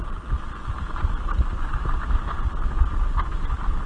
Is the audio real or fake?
real